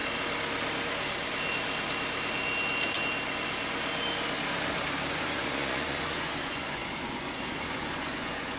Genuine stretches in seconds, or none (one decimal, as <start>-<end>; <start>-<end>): 0.0-5.1